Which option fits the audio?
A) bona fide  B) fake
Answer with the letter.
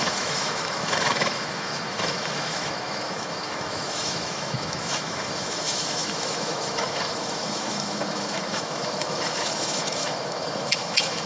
B